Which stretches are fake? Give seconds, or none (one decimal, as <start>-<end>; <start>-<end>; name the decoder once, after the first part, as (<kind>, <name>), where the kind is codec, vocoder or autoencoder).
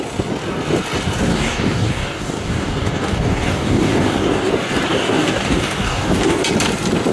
1.3-4.5 (codec, DAC); 4.9-6.4